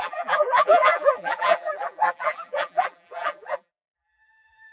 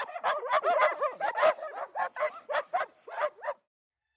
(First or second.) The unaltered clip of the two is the second